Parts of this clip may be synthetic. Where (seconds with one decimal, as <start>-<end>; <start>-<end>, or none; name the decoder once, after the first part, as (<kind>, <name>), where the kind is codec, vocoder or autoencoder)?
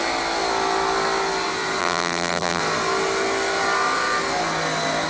1.8-2.6 (vocoder, BigVGAN v2)